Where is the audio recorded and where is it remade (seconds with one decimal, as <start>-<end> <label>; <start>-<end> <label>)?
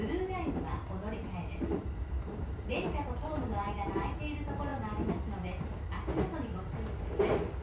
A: 0.0-1.7 recorded; 1.7-4.2 remade; 4.2-7.6 recorded